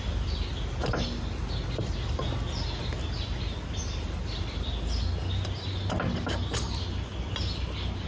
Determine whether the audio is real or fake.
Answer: real